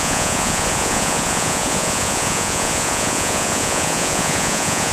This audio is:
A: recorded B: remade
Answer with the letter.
B